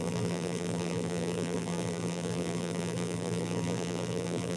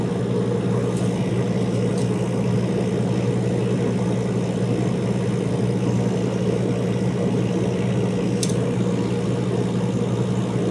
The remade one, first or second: first